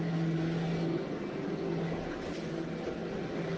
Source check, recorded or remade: recorded